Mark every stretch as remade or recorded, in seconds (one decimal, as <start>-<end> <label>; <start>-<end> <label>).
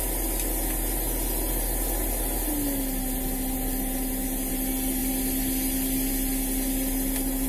0.0-7.5 recorded